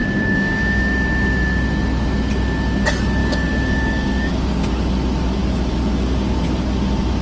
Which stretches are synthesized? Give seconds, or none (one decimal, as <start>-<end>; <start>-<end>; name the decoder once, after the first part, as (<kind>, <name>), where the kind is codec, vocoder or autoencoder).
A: 0.0-0.8 (codec, DAC); 3.2-4.7